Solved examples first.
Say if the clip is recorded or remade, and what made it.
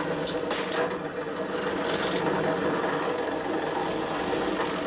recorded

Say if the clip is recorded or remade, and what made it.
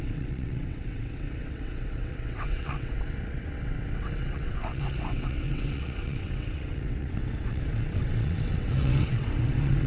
remade, vocoder, WaveNeXt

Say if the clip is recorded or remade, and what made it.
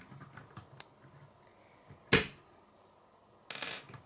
recorded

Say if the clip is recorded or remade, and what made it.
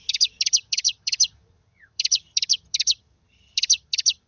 remade, vocoder, HiFi-GAN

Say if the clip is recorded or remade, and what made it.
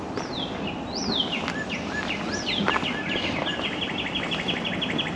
recorded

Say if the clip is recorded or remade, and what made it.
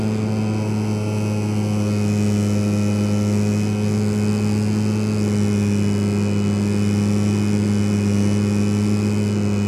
recorded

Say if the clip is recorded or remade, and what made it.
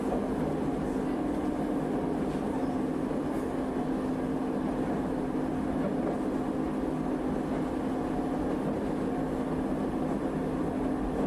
recorded